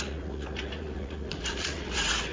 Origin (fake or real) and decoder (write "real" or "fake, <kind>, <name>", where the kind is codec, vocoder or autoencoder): fake, vocoder, Vocos